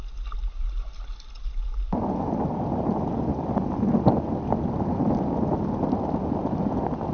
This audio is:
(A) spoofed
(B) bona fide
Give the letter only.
B